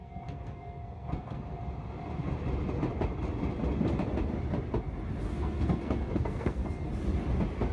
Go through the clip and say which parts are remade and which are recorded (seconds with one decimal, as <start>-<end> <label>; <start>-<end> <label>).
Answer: 0.0-1.6 remade; 1.6-5.2 recorded; 5.2-6.9 remade; 6.9-7.7 recorded